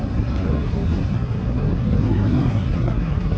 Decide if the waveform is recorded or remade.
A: remade